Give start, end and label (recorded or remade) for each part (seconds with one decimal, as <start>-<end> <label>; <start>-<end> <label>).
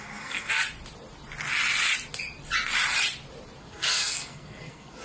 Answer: 0.0-0.6 remade; 0.6-3.6 recorded; 3.6-5.0 remade